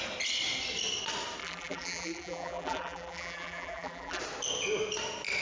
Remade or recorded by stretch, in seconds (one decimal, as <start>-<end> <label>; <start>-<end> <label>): 0.0-1.4 recorded; 1.4-4.2 remade; 4.2-5.4 recorded